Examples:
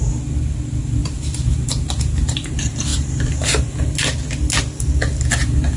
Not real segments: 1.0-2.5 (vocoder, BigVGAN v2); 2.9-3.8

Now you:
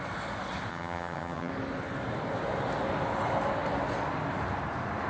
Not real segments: 0.7-1.5 (vocoder, HiFi-GAN)

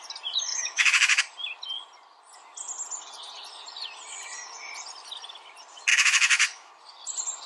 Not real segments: 0.5-1.2 (autoencoder, DAC-VAE); 5.9-6.7